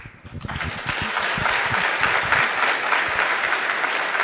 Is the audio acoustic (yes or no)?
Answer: yes